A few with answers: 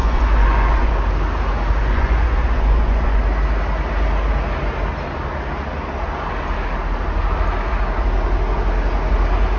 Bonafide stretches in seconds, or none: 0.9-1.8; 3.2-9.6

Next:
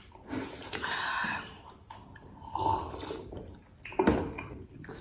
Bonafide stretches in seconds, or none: 0.0-5.0

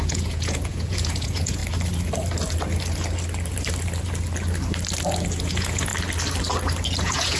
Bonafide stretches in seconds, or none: 1.6-5.4; 5.9-7.0

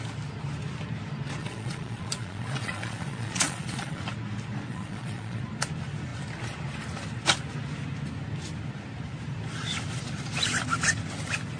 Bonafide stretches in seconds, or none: 0.0-1.4; 4.0-4.7; 5.4-11.6